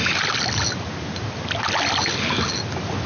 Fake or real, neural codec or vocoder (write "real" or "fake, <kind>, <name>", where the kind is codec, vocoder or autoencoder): real